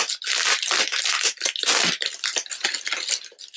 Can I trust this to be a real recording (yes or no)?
yes